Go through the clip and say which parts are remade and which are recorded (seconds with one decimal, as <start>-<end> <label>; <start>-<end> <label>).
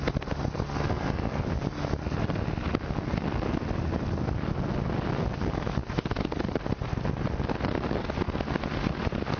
0.0-9.4 recorded